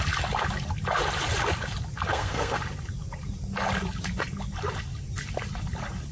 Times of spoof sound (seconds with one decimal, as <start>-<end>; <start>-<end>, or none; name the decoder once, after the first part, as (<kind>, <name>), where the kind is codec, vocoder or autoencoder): 2.1-2.6 (codec, SNAC)

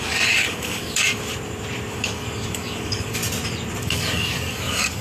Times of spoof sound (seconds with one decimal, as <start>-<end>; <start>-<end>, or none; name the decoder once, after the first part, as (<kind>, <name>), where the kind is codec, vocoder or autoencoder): 0.0-1.3 (codec, DAC); 1.9-3.2; 3.8-5.0

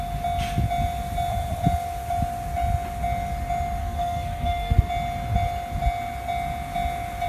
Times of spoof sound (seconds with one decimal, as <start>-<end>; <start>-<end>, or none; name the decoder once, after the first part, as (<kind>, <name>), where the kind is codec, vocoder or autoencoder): 3.8-4.9 (codec, SNAC)

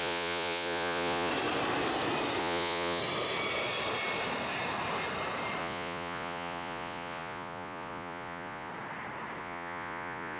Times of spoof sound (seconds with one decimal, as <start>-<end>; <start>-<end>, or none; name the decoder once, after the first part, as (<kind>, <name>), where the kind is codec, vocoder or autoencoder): 0.0-1.3 (vocoder, Vocos); 2.4-3.0; 5.6-8.7; 9.4-10.4

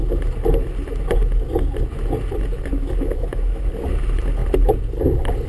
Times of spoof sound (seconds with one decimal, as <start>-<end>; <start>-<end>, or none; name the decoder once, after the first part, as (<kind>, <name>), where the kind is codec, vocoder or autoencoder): 2.7-3.7 (autoencoder, DAC-VAE)